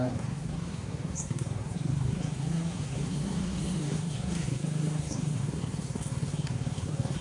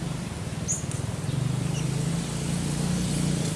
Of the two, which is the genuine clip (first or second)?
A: second